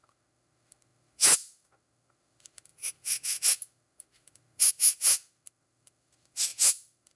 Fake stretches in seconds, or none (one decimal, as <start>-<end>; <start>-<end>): 0.0-7.2